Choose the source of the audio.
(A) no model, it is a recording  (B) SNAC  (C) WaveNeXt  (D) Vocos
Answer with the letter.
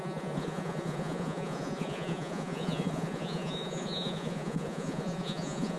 D